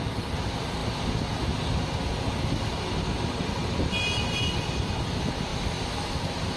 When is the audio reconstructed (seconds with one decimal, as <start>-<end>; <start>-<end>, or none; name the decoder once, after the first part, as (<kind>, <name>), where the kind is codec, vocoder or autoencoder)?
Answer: 3.6-5.1 (vocoder, BigVGAN v2)